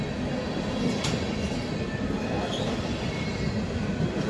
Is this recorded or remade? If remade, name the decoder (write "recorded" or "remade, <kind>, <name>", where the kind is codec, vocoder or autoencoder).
recorded